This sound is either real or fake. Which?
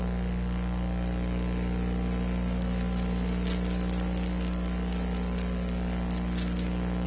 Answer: real